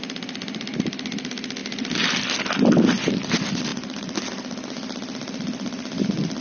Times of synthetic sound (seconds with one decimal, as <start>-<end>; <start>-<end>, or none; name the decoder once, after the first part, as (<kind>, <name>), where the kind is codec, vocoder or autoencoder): 3.7-4.3 (vocoder, BigVGAN v2)